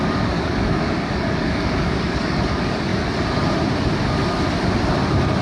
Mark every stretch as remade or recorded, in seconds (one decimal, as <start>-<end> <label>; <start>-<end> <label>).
0.0-2.9 remade; 2.9-5.4 recorded